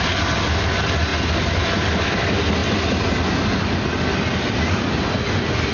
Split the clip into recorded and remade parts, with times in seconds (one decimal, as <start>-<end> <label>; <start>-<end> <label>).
0.0-5.7 recorded